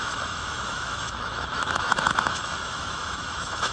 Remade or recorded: remade